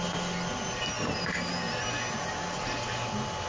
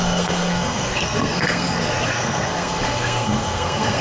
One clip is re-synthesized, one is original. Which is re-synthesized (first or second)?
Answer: second